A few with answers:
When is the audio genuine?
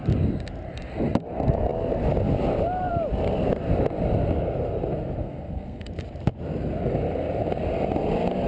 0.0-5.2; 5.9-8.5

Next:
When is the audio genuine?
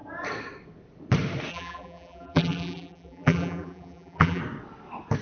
0.0-1.5; 4.4-5.2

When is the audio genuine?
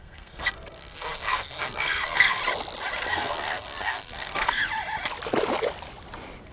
2.4-3.1; 4.6-6.5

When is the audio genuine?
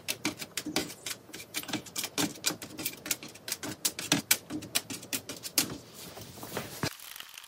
0.0-0.8; 1.8-7.5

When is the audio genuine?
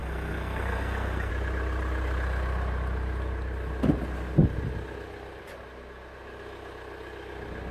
1.3-7.7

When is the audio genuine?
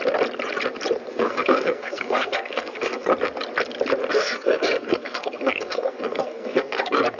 0.0-1.1; 3.1-4.1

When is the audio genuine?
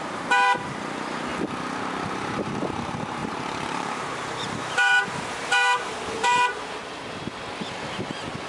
1.3-1.9; 6.8-8.5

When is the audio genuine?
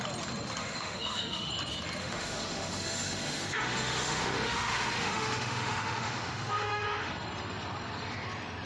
0.0-0.6; 1.5-2.0; 7.1-8.7